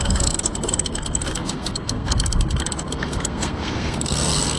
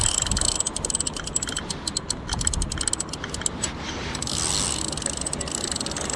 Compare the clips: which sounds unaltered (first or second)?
second